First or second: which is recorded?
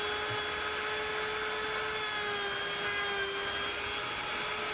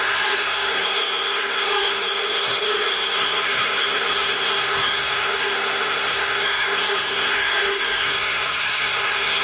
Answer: first